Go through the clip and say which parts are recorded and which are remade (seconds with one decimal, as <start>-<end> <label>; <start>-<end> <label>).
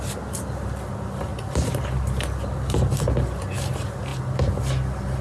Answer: 0.0-5.2 recorded